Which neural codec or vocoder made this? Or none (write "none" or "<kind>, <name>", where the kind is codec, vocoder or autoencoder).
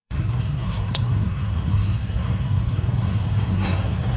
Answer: codec, SNAC